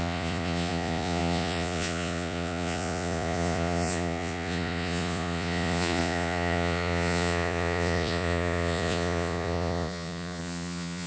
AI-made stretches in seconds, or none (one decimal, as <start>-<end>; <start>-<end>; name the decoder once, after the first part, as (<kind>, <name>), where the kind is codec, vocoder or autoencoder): 0.0-11.1 (vocoder, Vocos)

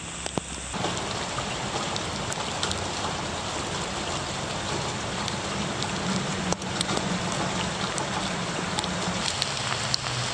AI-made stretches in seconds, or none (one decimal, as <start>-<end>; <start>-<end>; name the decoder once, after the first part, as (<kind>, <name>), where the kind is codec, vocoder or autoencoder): 6.3-7.1 (vocoder, Vocos)

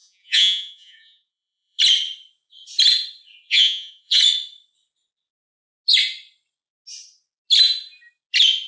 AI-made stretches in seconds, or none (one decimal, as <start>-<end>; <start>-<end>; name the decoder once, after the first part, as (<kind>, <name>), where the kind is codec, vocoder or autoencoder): 0.0-1.8 (vocoder, Vocos); 3.5-4.2

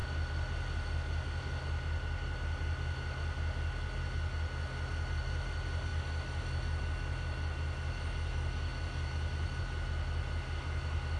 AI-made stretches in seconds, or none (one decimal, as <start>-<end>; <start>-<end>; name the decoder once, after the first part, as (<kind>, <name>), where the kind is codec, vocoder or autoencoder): none

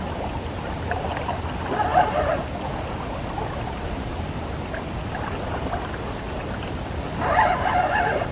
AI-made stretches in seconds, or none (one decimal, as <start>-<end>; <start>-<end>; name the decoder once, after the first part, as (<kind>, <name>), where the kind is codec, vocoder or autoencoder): none

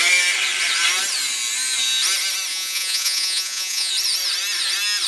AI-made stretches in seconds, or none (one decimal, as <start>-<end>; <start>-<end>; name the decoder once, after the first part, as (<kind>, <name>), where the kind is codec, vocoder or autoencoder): 2.5-3.9 (vocoder, Vocos)

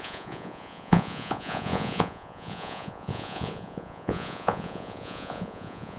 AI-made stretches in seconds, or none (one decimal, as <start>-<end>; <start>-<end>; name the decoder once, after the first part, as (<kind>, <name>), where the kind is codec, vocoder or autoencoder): 0.0-6.0 (vocoder, Vocos)

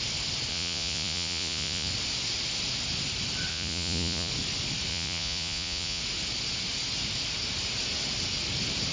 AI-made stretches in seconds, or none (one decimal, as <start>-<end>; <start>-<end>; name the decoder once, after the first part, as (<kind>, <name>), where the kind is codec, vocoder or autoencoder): 0.5-1.9 (vocoder, Vocos); 3.5-4.3; 4.9-6.0